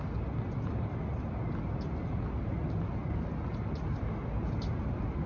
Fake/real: real